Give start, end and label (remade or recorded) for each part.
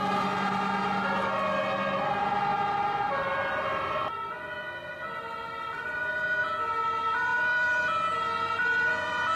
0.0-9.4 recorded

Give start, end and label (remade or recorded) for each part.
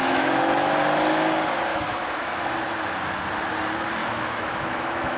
0.0-0.8 remade; 0.8-1.7 recorded; 1.7-2.5 remade; 2.5-4.0 recorded; 4.0-5.2 remade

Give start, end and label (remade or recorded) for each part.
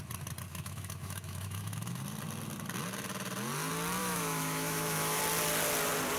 0.0-0.5 recorded; 0.5-2.0 remade; 2.0-4.0 recorded; 4.0-5.2 remade; 5.2-6.2 recorded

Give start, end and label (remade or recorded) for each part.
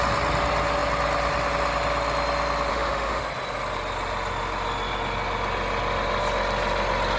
0.0-2.7 recorded; 2.7-3.2 remade; 3.2-7.2 recorded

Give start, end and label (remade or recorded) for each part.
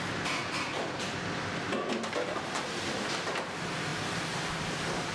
0.0-5.1 recorded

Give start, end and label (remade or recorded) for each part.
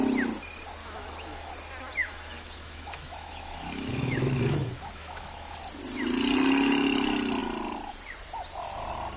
0.0-0.8 recorded; 0.8-1.5 remade; 1.5-2.0 recorded; 2.0-5.6 remade; 5.6-9.2 recorded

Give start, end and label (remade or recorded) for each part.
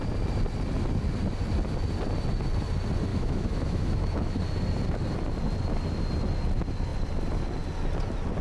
0.0-3.1 recorded; 3.1-4.4 remade; 4.4-8.4 recorded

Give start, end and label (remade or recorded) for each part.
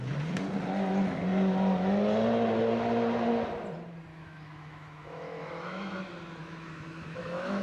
0.0-4.1 recorded; 4.1-6.0 remade; 6.0-6.4 recorded; 6.4-7.6 remade